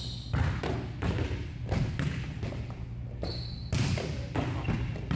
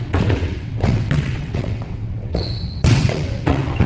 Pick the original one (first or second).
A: first